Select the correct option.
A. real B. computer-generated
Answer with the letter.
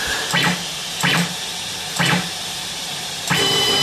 B